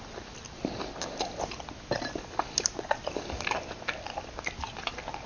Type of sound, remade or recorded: recorded